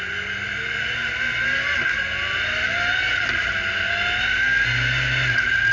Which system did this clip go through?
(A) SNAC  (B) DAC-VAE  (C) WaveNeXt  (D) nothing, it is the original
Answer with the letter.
D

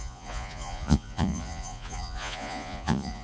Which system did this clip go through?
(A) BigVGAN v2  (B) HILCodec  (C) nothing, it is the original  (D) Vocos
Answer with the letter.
D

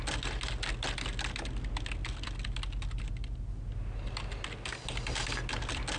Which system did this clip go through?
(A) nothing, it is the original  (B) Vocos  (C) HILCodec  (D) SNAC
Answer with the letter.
A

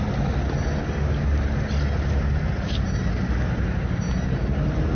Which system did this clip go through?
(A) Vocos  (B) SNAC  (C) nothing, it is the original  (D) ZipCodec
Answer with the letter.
C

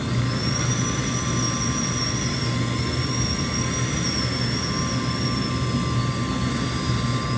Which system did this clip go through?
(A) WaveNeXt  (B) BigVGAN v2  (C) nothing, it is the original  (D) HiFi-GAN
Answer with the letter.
C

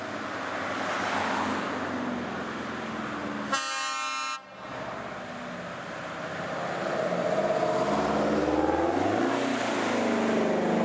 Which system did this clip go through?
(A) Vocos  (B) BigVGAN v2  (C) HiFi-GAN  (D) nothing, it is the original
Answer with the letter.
D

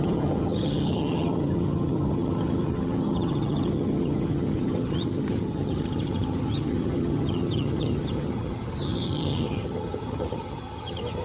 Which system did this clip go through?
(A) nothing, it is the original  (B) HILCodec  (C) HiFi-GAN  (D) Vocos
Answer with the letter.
C